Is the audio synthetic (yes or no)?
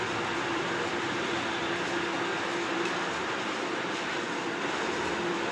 yes